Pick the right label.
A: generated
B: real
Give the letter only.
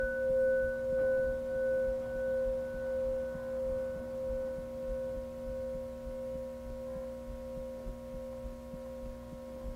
B